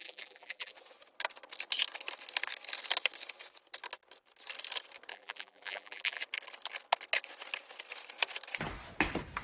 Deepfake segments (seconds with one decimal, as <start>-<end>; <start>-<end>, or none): 0.0-0.7; 5.1-6.2

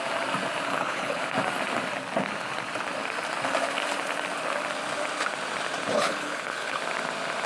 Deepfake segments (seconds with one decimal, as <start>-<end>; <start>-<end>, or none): 0.7-1.2; 5.9-6.8

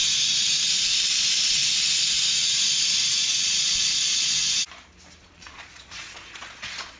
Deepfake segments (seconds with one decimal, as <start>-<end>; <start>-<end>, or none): 0.8-1.6; 3.2-4.4; 5.2-7.0

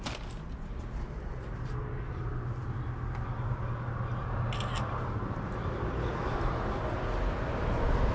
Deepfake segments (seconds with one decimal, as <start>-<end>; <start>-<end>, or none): none

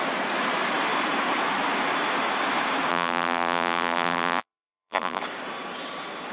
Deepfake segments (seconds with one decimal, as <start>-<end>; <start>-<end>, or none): 2.9-5.2